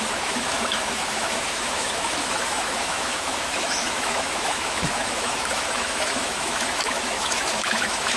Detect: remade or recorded remade